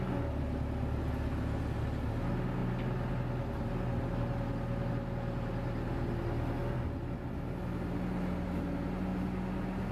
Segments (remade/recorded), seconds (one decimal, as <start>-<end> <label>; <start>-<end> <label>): 0.0-9.9 recorded